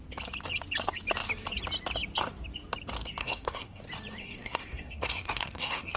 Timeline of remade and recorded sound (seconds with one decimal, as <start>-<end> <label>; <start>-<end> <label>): 0.0-3.2 recorded; 3.2-3.8 remade; 3.8-4.2 recorded; 4.2-6.0 remade